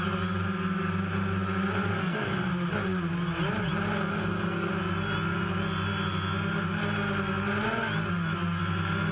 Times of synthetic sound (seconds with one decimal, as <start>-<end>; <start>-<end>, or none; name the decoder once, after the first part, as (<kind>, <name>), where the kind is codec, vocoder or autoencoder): 1.9-2.5 (codec, SNAC); 4.1-4.7